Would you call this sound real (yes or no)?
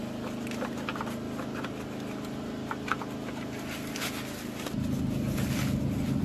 yes